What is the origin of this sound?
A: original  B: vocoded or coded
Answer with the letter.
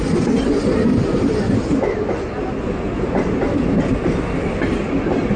A